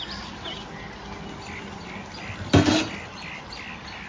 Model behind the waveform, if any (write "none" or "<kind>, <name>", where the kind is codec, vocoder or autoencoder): none